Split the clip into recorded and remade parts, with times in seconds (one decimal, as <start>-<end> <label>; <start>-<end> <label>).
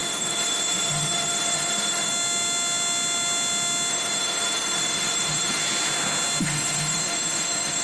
0.0-2.1 remade; 2.1-3.9 recorded; 3.9-5.6 remade; 5.6-6.4 recorded; 6.4-7.8 remade